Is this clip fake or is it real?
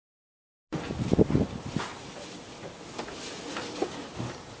real